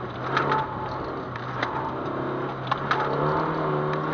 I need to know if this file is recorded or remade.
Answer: recorded